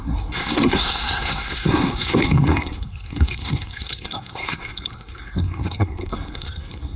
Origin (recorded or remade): remade